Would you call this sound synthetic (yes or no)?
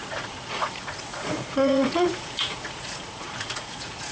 yes